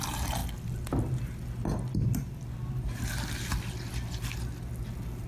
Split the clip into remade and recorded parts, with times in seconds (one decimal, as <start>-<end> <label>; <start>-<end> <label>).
0.0-5.3 recorded